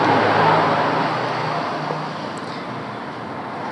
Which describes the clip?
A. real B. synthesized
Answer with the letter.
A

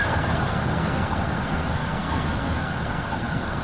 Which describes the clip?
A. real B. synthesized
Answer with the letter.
B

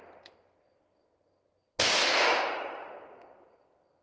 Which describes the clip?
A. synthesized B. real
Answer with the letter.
B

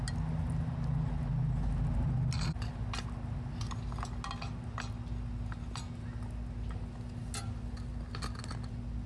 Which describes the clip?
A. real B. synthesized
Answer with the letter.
A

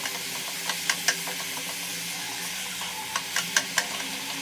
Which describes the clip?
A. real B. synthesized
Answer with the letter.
A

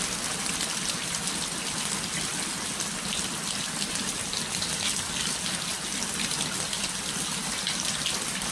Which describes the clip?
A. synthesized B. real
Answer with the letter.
B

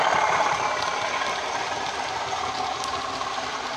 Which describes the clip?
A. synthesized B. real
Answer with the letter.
A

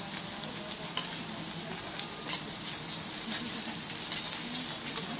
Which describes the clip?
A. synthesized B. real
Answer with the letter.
B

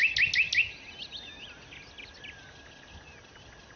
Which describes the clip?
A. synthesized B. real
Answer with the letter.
B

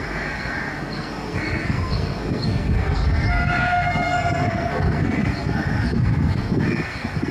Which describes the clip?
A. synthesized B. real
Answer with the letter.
A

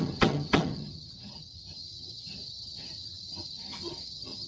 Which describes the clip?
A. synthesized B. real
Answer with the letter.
A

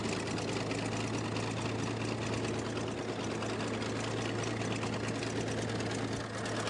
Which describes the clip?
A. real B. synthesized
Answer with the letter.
A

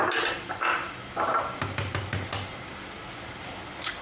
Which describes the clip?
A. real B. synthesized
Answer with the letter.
A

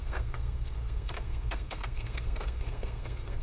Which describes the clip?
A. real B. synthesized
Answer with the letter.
B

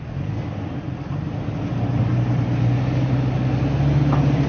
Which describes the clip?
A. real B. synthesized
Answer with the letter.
A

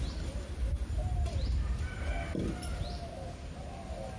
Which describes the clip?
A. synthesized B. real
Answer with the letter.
B